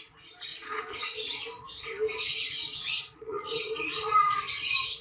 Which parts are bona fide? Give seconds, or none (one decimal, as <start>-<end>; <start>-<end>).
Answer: 0.0-0.5; 1.4-2.6; 4.4-5.0